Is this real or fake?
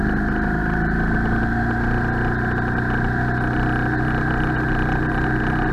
real